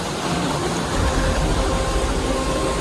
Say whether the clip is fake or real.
real